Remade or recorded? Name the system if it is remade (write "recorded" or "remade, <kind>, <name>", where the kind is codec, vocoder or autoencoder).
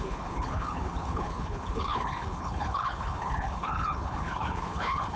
remade, codec, HILCodec